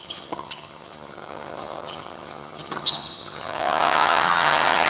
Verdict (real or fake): fake